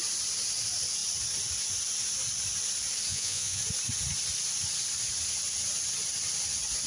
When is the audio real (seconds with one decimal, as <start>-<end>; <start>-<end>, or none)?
0.0-3.1; 3.6-6.9